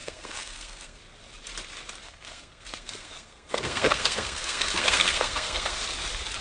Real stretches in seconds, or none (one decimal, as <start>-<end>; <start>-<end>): 1.0-2.0; 5.8-6.4